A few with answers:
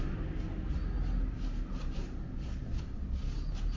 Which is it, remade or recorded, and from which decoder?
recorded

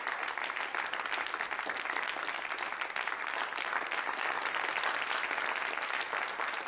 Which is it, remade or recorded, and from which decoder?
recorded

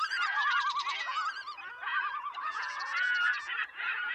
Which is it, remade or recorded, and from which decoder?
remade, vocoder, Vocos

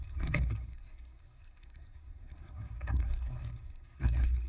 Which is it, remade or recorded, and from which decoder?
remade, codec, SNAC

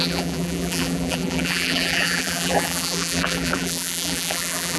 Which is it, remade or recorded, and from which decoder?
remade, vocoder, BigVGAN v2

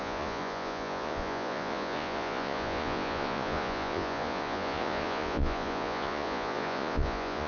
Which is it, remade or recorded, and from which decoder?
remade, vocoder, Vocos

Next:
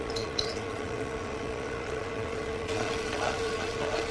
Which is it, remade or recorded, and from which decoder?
remade, vocoder, Vocos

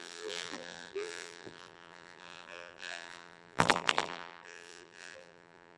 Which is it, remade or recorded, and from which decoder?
remade, vocoder, BigVGAN v2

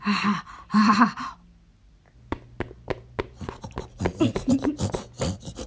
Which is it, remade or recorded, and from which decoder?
recorded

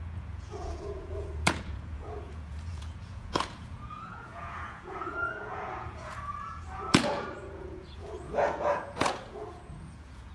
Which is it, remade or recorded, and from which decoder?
remade, vocoder, Vocos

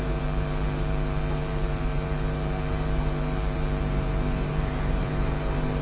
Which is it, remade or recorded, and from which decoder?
remade, vocoder, BigVGAN v2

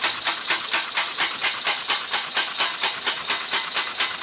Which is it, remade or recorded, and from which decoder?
recorded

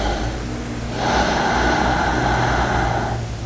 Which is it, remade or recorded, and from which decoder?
recorded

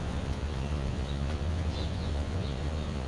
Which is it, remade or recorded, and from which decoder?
remade, vocoder, Vocos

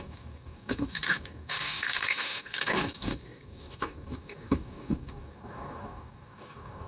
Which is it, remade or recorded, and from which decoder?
remade, codec, DAC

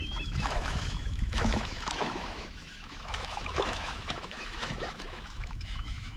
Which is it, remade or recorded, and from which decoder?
remade, autoencoder, DAC-VAE